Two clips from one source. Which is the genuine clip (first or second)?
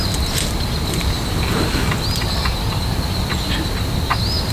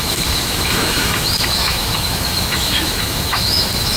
first